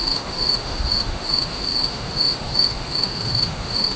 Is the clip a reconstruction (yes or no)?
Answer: yes